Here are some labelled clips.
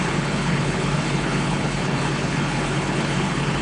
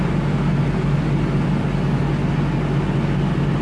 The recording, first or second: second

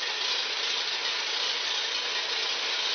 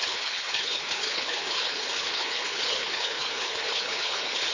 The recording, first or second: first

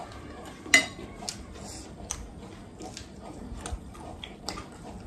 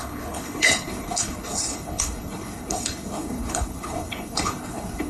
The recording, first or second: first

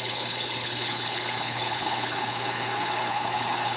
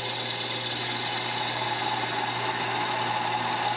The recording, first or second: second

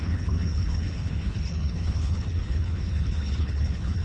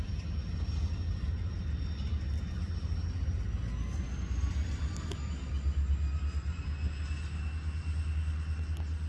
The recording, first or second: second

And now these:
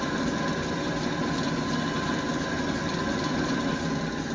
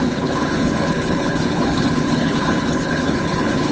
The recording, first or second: first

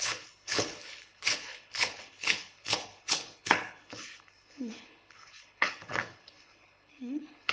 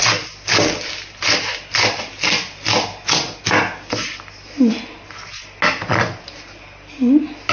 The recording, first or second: second